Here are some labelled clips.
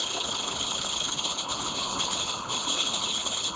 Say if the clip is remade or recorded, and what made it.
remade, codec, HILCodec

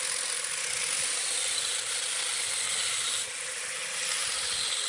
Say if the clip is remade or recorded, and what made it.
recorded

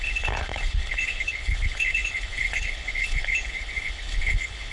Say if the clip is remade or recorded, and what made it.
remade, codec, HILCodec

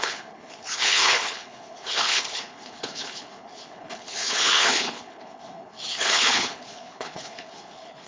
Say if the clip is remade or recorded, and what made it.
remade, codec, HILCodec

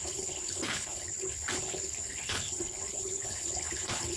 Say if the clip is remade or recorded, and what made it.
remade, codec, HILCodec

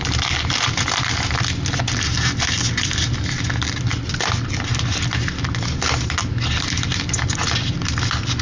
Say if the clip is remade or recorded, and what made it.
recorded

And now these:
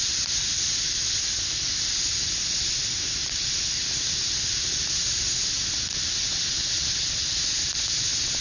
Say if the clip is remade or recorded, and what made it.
recorded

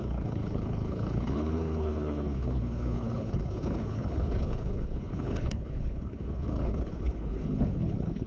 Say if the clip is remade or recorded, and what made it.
remade, codec, HILCodec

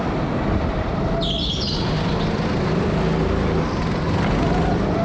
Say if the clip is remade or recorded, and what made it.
recorded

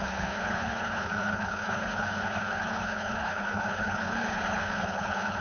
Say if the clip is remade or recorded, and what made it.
remade, codec, HILCodec